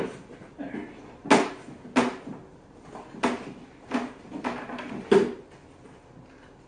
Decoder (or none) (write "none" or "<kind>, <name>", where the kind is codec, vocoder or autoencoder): none